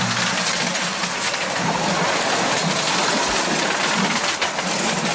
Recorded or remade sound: recorded